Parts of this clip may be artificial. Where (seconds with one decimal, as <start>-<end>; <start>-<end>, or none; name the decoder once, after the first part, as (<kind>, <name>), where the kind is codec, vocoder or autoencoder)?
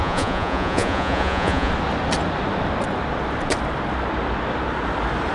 0.0-1.7 (vocoder, Vocos)